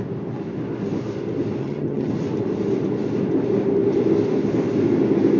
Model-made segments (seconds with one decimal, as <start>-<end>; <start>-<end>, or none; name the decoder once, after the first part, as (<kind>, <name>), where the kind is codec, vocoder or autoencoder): 1.6-2.1 (vocoder, HiFi-GAN)